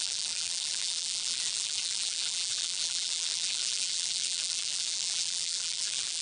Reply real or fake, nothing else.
fake